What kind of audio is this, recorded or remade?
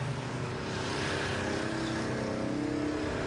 recorded